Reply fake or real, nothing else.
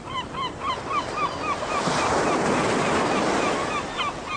real